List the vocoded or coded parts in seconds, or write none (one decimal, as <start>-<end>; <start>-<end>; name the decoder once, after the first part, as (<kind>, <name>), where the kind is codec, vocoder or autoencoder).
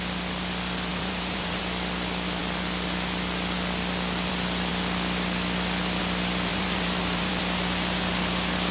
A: 0.9-1.6 (vocoder, BigVGAN v2); 6.5-7.4